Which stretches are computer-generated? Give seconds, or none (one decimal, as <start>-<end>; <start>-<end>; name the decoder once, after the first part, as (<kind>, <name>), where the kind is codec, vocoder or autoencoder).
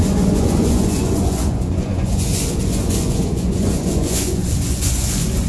0.0-5.5 (vocoder, Vocos)